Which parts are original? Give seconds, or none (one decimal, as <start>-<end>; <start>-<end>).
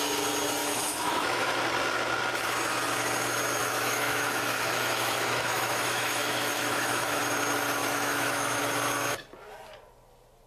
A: 0.0-0.6; 1.5-3.6; 7.2-7.8; 8.6-10.5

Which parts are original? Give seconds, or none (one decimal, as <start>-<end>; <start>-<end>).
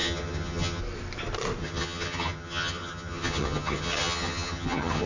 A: 0.8-1.6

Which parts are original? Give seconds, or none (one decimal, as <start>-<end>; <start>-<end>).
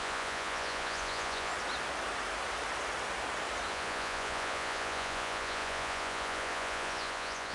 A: 1.5-3.7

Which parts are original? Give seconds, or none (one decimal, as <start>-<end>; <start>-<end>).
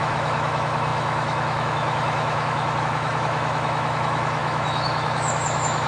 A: none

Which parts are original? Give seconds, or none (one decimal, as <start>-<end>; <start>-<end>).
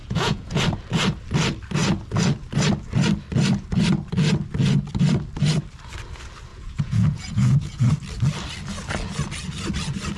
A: 0.6-6.5; 7.9-10.2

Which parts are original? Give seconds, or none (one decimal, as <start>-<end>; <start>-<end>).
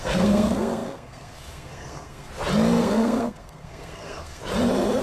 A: 2.3-2.8; 4.4-5.0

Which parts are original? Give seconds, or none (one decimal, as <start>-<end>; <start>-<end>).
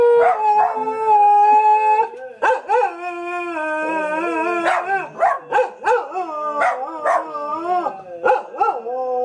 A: 0.0-9.2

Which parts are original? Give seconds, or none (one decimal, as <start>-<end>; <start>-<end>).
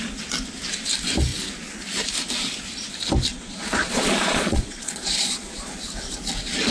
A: 0.0-3.3; 5.7-6.7